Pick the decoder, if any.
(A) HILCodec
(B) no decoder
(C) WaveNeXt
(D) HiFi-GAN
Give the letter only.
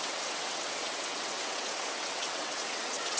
C